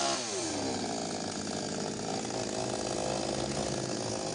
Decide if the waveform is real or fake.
real